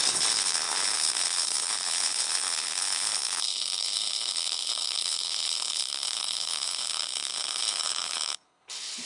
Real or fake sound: fake